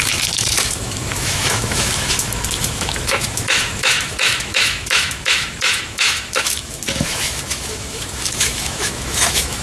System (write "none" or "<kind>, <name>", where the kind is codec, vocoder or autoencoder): autoencoder, DAC-VAE